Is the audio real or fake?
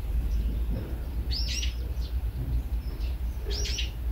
fake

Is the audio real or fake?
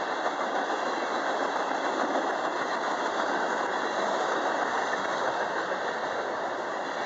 real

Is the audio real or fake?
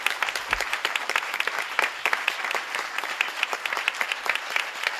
fake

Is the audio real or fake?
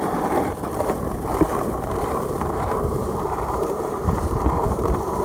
fake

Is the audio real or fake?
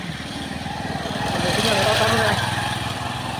real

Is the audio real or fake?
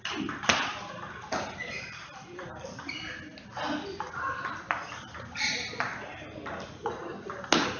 real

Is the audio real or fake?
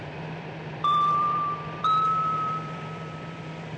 fake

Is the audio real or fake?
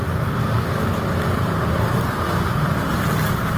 fake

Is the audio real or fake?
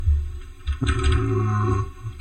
real